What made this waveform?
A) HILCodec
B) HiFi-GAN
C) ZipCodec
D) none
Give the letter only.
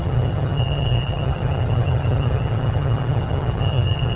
B